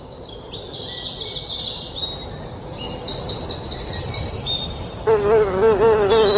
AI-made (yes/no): no